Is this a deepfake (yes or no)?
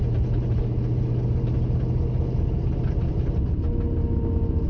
no